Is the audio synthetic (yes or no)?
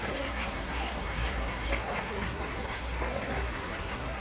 yes